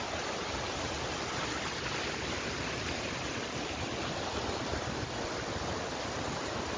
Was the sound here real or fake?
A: real